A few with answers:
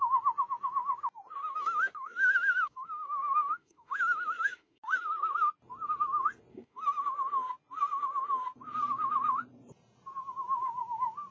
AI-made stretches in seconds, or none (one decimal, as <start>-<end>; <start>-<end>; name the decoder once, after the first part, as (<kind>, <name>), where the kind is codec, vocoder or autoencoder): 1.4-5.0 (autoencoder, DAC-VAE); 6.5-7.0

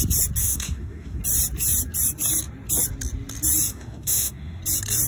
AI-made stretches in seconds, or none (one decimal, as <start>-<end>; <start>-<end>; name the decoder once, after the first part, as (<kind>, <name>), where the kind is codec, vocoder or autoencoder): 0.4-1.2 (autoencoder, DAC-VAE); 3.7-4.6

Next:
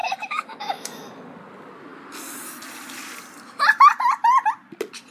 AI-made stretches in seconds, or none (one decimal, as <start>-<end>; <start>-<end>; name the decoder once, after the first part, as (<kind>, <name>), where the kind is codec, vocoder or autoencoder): 0.0-1.1 (autoencoder, DAC-VAE)

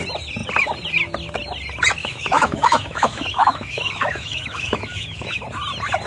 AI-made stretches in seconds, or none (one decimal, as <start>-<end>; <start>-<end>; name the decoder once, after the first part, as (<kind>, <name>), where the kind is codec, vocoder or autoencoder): 2.0-5.4 (autoencoder, DAC-VAE)

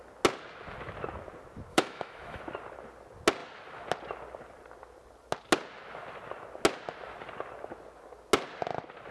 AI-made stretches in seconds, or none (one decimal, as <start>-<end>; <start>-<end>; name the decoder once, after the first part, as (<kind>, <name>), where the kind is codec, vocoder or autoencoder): 1.7-2.4 (autoencoder, DAC-VAE)